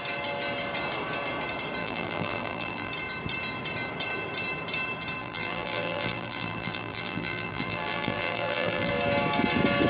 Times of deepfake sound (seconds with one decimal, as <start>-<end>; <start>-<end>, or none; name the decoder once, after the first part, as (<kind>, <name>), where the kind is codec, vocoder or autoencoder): 1.8-2.9 (vocoder, BigVGAN v2); 5.2-8.9